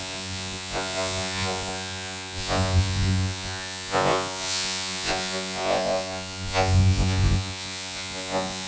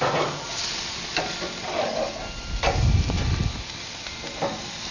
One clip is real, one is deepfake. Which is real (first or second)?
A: second